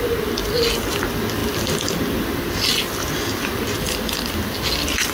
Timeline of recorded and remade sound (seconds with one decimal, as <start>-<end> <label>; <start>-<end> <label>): 0.0-5.1 recorded